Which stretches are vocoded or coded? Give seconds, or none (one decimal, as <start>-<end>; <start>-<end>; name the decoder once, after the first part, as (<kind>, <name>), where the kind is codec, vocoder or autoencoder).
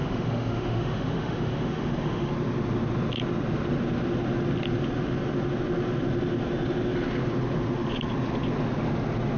0.0-2.3 (autoencoder, DAC-VAE)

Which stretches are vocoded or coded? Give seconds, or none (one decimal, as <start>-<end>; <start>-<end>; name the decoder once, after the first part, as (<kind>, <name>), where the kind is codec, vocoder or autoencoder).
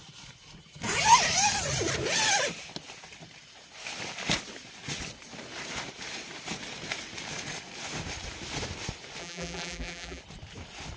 9.2-10.2 (vocoder, BigVGAN v2)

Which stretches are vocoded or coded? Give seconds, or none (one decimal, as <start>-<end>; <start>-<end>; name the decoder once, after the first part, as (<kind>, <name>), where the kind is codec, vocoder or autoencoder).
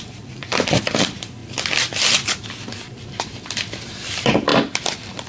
0.0-1.4 (vocoder, BigVGAN v2); 3.1-4.5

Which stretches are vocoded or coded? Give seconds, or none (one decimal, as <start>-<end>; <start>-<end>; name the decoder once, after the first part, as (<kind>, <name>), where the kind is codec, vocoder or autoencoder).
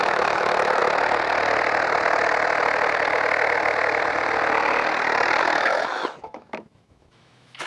0.0-0.8 (autoencoder, DAC-VAE); 5.4-7.7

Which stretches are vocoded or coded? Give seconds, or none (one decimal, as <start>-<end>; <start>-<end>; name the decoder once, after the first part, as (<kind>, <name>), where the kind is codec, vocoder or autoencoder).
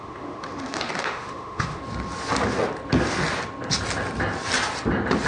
0.0-1.8 (autoencoder, DAC-VAE)